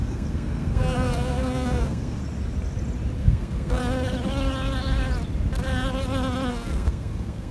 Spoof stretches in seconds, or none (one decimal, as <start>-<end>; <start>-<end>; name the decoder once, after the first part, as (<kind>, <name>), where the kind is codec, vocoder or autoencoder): 0.0-2.2 (codec, SNAC); 3.2-3.8; 6.5-7.5